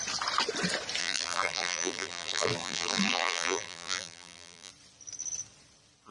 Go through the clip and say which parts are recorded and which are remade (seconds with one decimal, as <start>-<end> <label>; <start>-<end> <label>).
0.0-1.0 recorded; 1.0-4.7 remade; 4.7-6.1 recorded